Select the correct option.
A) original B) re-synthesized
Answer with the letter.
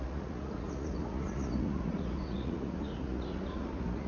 B